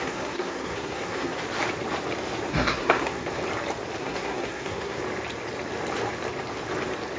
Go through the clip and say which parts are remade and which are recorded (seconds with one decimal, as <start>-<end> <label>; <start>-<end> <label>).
0.0-1.4 remade; 1.4-2.5 recorded; 2.5-3.4 remade; 3.4-4.0 recorded; 4.0-5.0 remade; 5.0-7.2 recorded